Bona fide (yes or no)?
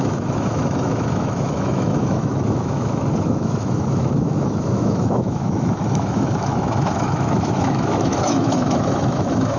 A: no